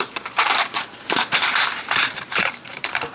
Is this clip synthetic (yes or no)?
yes